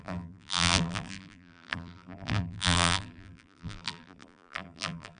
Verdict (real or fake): fake